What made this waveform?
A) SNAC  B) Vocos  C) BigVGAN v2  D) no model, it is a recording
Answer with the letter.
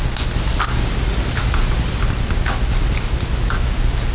D